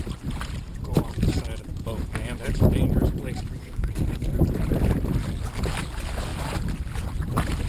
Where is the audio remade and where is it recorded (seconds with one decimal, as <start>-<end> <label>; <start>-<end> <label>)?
0.0-3.6 recorded; 3.6-4.4 remade; 4.4-7.7 recorded